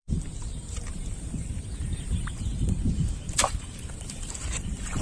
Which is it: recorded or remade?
remade